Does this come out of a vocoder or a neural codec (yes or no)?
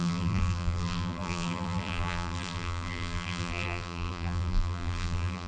yes